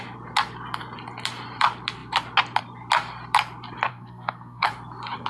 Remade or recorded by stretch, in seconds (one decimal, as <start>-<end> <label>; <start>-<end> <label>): 0.0-3.9 recorded; 3.9-4.7 remade; 4.7-5.3 recorded